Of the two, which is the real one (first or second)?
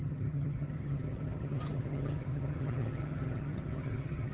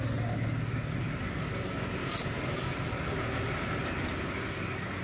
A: second